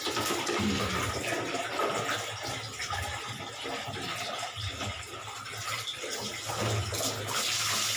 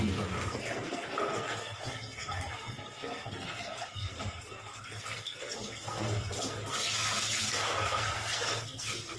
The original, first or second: first